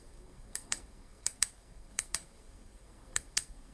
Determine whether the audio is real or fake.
fake